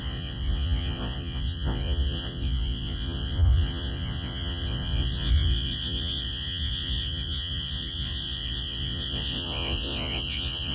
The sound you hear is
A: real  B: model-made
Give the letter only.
B